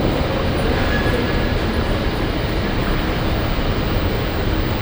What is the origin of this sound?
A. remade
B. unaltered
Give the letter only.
B